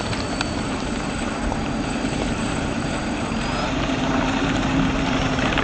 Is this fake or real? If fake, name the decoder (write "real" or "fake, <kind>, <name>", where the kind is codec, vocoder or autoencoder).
fake, vocoder, BigVGAN v2